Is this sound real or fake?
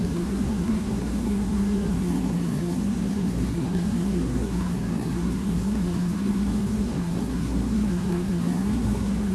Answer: fake